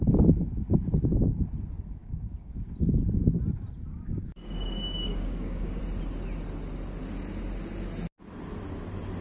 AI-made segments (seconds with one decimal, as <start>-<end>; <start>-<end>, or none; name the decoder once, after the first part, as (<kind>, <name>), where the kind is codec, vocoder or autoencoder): 2.0-2.7 (codec, DAC); 3.9-5.8